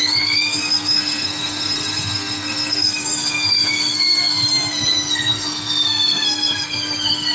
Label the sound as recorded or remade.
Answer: remade